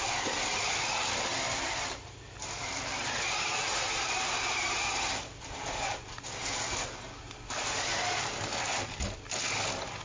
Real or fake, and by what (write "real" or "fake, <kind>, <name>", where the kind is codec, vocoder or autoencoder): real